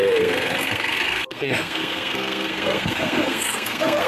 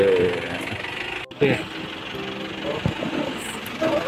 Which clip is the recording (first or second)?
second